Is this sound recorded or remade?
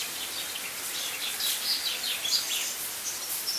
recorded